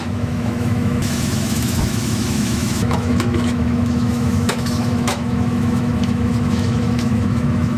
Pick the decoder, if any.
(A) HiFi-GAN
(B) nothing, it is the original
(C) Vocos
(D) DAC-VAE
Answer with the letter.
D